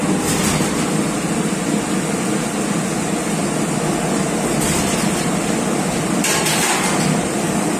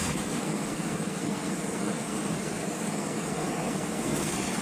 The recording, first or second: first